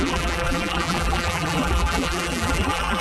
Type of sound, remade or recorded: remade